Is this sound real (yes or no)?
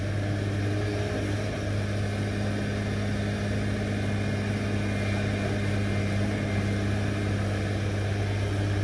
yes